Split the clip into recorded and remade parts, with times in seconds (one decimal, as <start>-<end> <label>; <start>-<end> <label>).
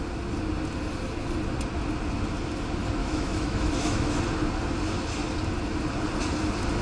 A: 0.0-3.0 recorded; 3.0-4.2 remade; 4.2-6.8 recorded